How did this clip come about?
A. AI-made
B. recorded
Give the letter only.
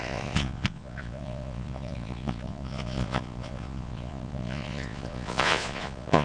A